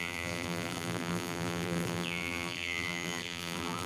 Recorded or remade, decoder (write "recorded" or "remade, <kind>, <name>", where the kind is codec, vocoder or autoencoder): remade, vocoder, BigVGAN v2